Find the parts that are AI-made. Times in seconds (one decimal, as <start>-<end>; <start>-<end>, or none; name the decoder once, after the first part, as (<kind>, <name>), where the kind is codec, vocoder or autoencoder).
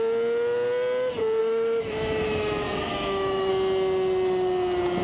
1.4-3.5 (autoencoder, DAC-VAE)